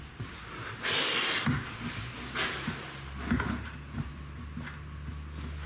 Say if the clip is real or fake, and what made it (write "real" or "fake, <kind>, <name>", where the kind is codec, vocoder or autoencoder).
real